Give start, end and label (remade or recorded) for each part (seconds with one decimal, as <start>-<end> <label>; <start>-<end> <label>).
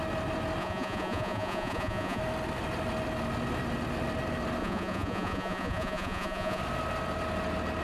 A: 0.0-0.6 recorded; 0.6-2.2 remade; 2.2-4.6 recorded; 4.6-6.6 remade; 6.6-7.8 recorded